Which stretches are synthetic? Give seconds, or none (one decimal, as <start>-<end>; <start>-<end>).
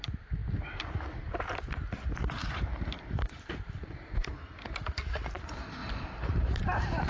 2.4-4.1; 5.8-7.1